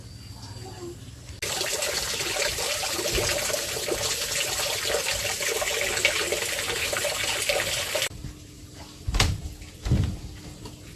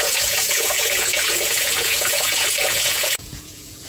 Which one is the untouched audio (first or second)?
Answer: first